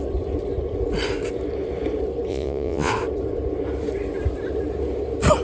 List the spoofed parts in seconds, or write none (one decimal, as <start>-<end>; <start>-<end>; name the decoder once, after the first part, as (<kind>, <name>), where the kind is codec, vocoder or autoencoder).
2.3-2.9 (vocoder, Vocos)